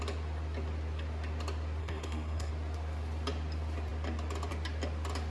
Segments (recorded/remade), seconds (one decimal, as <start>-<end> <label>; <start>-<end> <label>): 0.0-1.8 recorded; 1.8-2.5 remade; 2.5-5.3 recorded